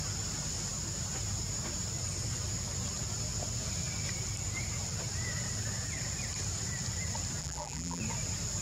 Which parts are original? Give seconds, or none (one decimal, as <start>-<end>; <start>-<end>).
0.0-7.4; 8.0-8.6